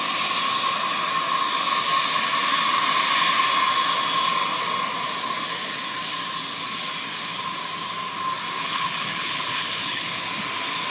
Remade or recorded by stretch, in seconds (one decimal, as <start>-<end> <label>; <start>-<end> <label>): 0.0-8.5 recorded; 8.5-10.2 remade; 10.2-10.9 recorded